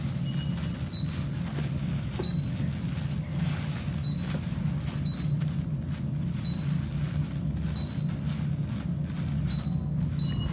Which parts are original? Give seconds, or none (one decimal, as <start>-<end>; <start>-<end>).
0.0-1.8; 2.4-10.5